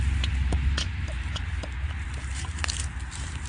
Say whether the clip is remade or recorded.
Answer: remade